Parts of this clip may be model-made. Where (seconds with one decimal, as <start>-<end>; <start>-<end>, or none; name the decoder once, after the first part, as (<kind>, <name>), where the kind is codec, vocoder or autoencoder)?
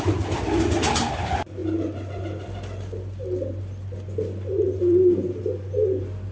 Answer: none